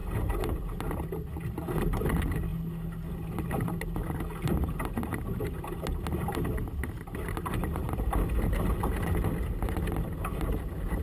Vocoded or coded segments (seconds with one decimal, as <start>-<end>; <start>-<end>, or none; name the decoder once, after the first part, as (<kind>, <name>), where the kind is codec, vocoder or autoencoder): none